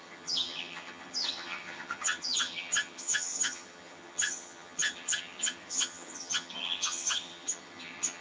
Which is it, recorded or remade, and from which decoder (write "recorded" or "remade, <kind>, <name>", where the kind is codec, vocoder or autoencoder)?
remade, vocoder, HiFi-GAN